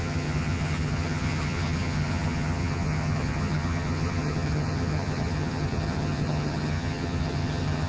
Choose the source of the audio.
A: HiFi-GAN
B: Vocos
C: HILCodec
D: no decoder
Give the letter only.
A